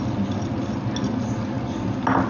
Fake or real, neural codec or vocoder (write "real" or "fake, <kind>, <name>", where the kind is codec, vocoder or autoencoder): real